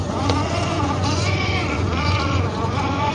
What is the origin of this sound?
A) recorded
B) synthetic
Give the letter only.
B